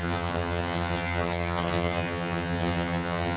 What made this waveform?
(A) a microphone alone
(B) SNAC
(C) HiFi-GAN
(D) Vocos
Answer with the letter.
C